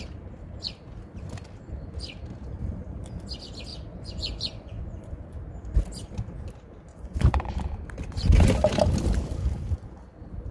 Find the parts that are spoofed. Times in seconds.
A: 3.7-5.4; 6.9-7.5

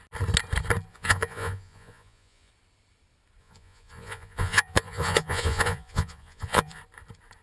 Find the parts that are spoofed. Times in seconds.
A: 0.9-2.5; 3.4-6.8

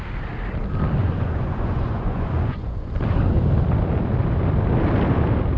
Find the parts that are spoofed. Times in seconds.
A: 1.0-2.9